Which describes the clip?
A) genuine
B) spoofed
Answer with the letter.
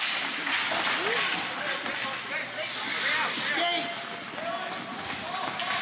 A